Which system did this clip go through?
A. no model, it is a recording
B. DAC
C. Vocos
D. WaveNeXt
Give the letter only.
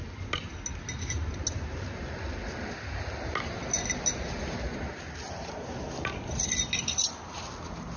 A